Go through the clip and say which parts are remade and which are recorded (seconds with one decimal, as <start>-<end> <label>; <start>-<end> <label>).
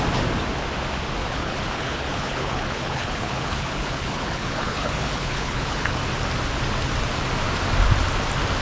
0.0-1.2 recorded; 1.2-6.0 remade; 6.0-8.6 recorded